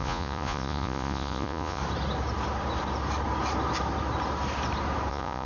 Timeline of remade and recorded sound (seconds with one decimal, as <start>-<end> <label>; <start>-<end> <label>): 0.0-1.8 remade; 1.8-5.1 recorded; 5.1-5.5 remade